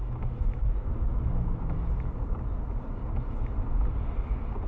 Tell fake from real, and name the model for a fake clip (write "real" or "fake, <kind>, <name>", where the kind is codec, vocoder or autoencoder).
real